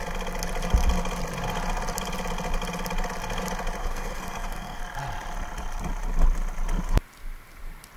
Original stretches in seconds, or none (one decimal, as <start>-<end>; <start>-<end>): 0.0-3.8; 4.8-8.0